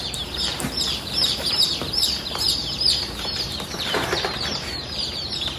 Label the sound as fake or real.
fake